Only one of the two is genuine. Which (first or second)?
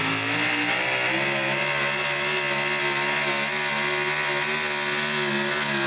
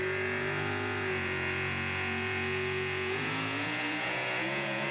first